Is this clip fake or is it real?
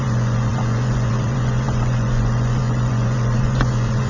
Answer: fake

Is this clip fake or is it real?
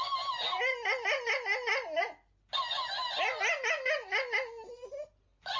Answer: real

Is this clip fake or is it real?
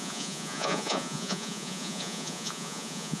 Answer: fake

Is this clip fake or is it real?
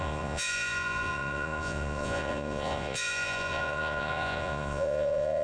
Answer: fake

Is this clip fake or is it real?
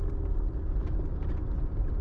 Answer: real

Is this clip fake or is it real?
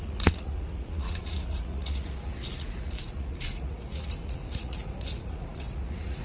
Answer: fake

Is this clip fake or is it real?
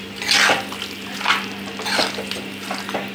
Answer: real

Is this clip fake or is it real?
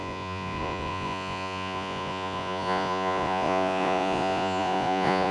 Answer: fake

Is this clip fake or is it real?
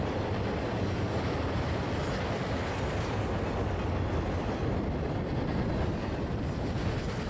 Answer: real